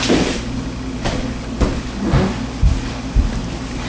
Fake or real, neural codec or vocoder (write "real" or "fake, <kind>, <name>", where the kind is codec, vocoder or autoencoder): real